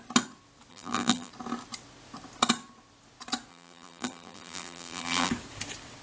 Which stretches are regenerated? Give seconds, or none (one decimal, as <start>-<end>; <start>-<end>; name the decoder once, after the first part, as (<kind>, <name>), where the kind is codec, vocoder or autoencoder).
0.7-1.3 (vocoder, BigVGAN v2); 3.5-5.3